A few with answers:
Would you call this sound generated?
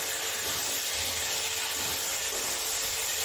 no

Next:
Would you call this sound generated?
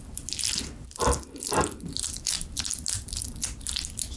no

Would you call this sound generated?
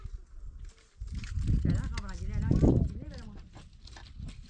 no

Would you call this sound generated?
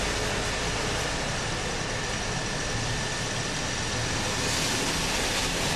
no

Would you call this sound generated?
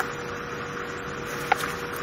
no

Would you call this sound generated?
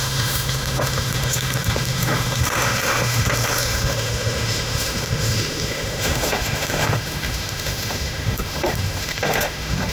yes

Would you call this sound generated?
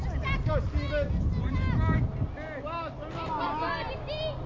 no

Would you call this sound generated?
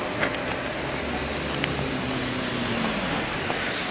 no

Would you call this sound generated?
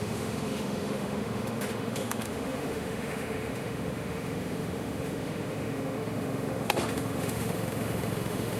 yes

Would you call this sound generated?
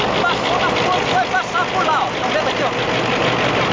no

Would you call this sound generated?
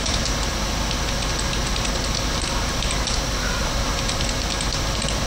no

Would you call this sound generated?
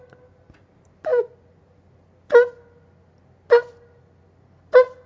no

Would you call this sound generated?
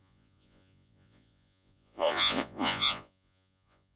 yes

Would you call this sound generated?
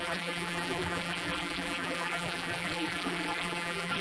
yes